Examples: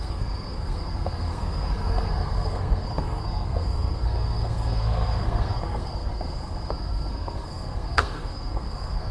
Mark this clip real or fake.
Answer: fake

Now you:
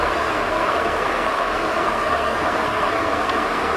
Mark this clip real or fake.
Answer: fake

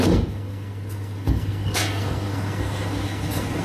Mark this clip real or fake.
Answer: fake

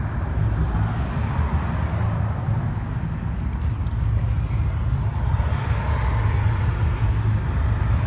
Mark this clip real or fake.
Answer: real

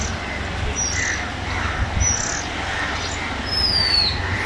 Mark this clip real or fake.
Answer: real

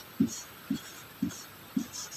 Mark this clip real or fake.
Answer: real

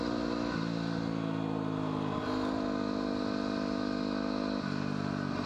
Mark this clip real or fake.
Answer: real